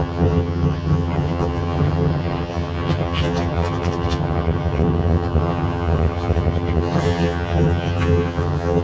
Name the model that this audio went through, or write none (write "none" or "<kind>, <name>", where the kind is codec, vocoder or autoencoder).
vocoder, HiFi-GAN